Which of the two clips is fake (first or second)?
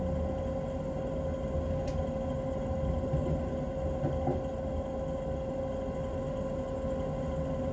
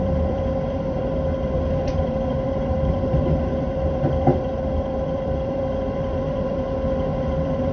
second